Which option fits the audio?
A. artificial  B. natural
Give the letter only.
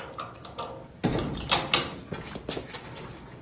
B